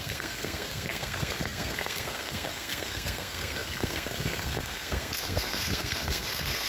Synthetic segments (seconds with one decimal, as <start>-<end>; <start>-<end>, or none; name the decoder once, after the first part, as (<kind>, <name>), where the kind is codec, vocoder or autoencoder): 0.0-6.7 (codec, SNAC)